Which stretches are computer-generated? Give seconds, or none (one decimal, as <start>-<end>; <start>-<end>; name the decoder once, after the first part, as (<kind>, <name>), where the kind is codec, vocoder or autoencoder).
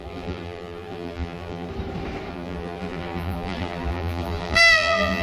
0.0-1.7 (vocoder, BigVGAN v2); 2.3-5.2